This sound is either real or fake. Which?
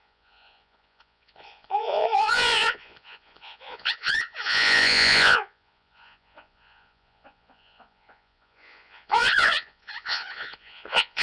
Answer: fake